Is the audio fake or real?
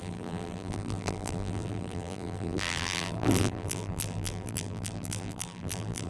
fake